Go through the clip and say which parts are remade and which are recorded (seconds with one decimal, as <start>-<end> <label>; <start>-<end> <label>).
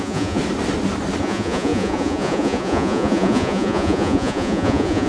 0.0-0.4 remade; 0.4-1.2 recorded; 1.2-5.1 remade